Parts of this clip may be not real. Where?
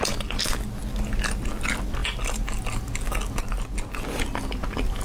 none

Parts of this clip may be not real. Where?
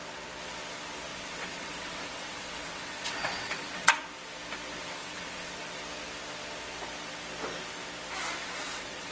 1.1-3.9 (vocoder, WaveNeXt); 5.0-5.6; 8.4-9.1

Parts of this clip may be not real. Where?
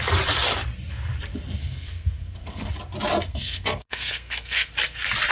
1.6-2.7 (codec, SNAC); 3.3-4.7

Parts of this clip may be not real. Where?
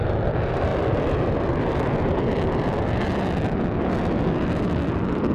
none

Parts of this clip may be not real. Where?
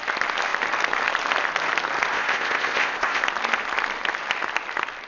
2.1-3.2 (codec, ZipCodec)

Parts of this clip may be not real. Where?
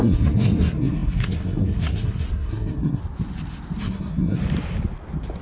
0.0-3.0 (codec, SNAC); 3.8-4.4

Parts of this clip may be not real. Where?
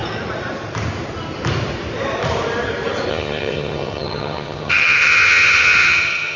3.1-6.4 (vocoder, HiFi-GAN)